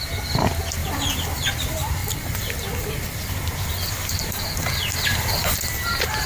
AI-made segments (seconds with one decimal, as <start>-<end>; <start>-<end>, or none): 0.8-1.5; 2.0-4.2; 5.1-5.6